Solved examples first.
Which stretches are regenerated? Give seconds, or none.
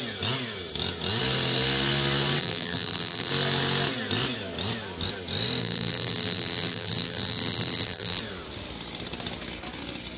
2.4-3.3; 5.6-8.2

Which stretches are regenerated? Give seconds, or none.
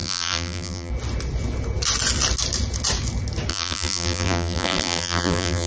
0.0-0.9; 3.5-5.7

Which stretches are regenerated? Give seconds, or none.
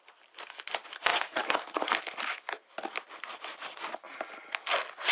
none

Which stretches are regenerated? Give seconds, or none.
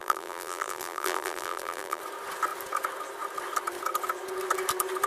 0.0-2.0